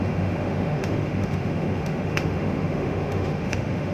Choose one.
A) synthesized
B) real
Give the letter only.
A